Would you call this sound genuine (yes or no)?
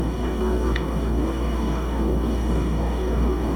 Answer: no